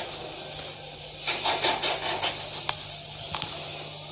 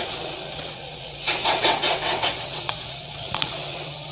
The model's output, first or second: second